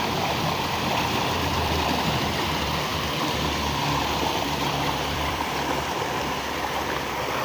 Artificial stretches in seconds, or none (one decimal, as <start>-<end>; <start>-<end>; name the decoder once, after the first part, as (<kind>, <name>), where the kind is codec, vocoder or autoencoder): 0.0-2.9 (vocoder, BigVGAN v2); 4.0-7.4